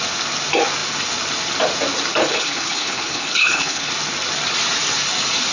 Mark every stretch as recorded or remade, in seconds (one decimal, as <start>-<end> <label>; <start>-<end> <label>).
0.0-2.2 recorded; 2.2-3.9 remade; 3.9-5.5 recorded